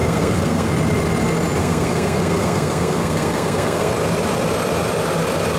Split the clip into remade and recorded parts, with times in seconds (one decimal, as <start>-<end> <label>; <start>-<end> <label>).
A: 0.0-0.7 remade; 0.7-1.6 recorded; 1.6-3.9 remade; 3.9-5.6 recorded

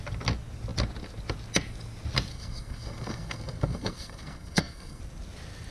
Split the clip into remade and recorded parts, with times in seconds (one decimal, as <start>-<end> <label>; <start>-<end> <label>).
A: 0.0-2.3 recorded; 2.3-5.0 remade; 5.0-5.7 recorded

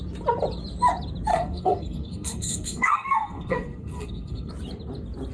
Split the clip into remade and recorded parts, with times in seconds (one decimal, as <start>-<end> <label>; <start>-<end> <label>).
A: 0.0-1.3 recorded; 1.3-4.5 remade; 4.5-5.3 recorded

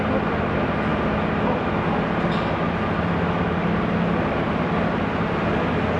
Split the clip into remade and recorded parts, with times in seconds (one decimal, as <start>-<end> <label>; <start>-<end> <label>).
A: 0.0-6.0 recorded

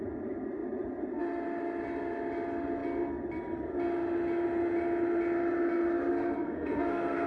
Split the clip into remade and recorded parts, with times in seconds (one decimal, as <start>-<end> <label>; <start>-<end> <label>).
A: 0.0-6.1 recorded; 6.1-7.3 remade

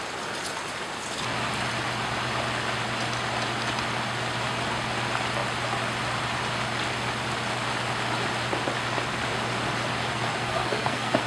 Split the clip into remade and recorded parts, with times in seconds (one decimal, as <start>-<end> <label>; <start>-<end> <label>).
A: 0.0-10.1 recorded; 10.1-11.3 remade